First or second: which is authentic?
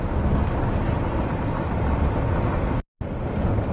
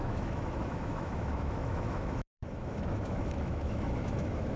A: first